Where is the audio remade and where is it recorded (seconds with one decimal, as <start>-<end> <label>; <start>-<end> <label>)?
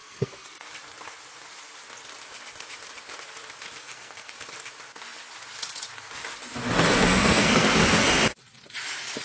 0.0-0.7 remade; 0.7-3.8 recorded; 3.8-4.3 remade; 4.3-6.9 recorded; 6.9-7.7 remade; 7.7-9.2 recorded